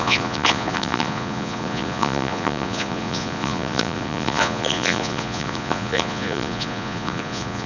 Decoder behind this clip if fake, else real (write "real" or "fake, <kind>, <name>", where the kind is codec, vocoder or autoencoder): fake, vocoder, Vocos